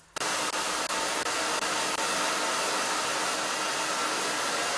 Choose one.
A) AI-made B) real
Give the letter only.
B